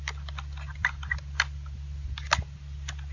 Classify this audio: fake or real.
real